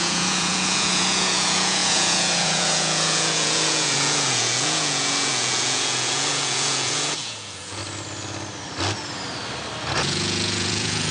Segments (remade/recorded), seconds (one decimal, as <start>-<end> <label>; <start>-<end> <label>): 0.0-7.8 remade; 7.8-10.0 recorded; 10.0-11.1 remade